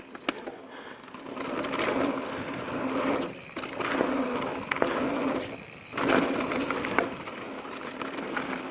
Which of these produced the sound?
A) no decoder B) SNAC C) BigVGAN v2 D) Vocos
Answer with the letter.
A